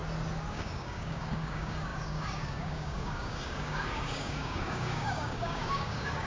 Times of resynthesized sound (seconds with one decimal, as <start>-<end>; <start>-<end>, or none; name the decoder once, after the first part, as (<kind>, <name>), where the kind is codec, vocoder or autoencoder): 0.5-6.3 (codec, DAC)